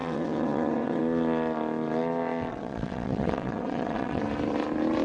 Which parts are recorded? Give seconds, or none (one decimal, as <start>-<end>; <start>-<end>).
1.0-2.5; 4.2-5.0